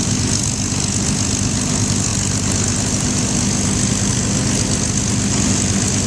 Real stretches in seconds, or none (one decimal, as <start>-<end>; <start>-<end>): 0.0-6.1